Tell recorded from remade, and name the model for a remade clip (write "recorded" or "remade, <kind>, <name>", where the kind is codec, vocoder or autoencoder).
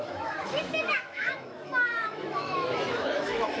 remade, autoencoder, DAC-VAE